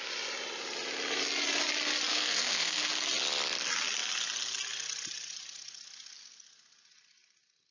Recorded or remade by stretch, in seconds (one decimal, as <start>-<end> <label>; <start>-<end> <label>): 0.0-2.1 recorded; 2.1-2.8 remade; 2.8-7.7 recorded